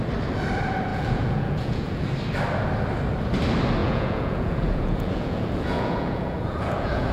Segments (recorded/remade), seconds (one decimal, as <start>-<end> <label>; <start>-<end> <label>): 0.0-0.9 recorded; 0.9-2.1 remade; 2.1-3.8 recorded; 3.8-7.1 remade